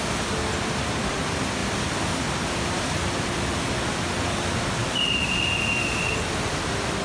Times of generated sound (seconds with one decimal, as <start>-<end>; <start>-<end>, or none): 1.6-3.7; 4.8-5.5